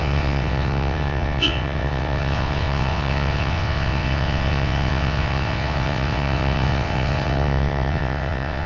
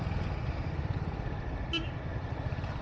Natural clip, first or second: second